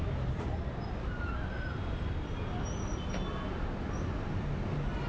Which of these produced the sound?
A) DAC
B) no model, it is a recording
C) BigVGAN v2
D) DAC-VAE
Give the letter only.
B